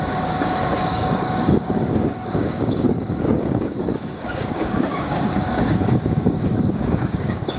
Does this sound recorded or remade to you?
remade